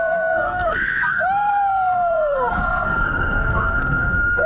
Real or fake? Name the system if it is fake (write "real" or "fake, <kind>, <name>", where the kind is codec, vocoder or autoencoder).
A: fake, codec, SNAC